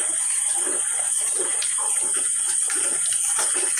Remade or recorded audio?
recorded